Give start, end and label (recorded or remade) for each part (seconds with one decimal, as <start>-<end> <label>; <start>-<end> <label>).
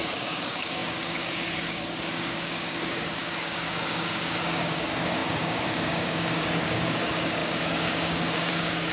0.0-8.9 remade